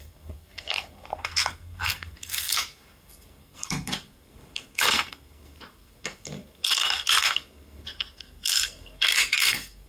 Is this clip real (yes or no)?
no